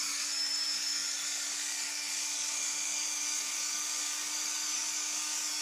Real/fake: fake